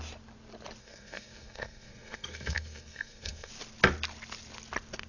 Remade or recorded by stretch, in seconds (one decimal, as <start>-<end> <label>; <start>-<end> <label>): 0.0-0.8 recorded; 0.8-3.5 remade; 3.5-5.1 recorded